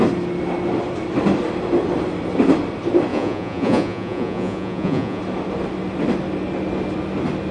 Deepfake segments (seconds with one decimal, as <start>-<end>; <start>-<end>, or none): 3.1-5.2